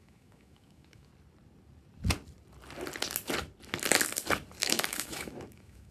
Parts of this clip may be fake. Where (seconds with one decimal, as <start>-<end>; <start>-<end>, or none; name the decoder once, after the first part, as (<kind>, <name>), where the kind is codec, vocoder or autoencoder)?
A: 0.0-1.1 (autoencoder, DAC-VAE); 4.6-5.9